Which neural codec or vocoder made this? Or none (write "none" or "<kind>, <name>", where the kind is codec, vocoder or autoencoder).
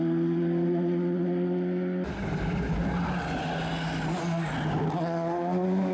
none